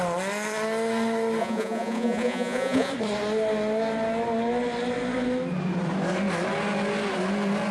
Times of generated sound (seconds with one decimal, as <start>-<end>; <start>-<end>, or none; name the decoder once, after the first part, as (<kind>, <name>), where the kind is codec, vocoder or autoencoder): 1.4-2.9 (vocoder, Vocos)